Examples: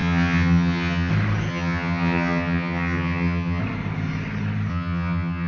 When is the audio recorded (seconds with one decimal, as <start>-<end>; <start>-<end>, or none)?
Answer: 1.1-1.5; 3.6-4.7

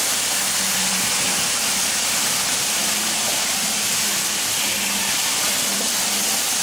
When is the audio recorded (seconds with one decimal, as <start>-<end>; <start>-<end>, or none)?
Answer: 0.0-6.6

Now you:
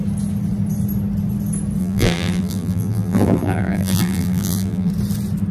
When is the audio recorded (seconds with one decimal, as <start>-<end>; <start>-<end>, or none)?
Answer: 0.0-1.8; 4.9-5.5

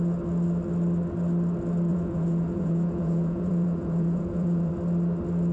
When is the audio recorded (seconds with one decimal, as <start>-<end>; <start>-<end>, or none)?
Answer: 0.0-1.9; 4.7-5.5

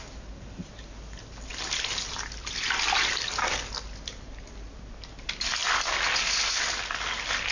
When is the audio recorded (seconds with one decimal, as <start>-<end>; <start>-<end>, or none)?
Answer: 0.0-7.5

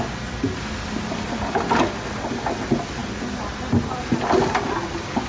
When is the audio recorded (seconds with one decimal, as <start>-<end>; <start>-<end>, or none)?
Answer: 0.0-5.3